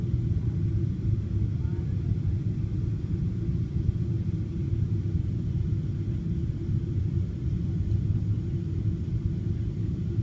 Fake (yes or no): no